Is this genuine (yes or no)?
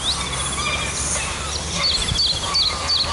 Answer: yes